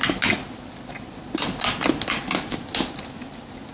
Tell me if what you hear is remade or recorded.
recorded